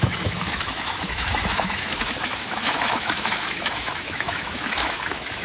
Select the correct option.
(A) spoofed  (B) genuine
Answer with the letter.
A